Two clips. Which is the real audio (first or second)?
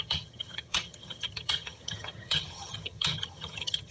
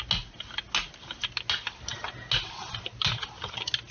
second